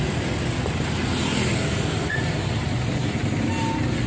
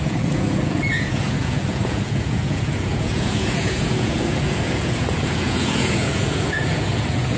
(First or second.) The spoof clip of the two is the second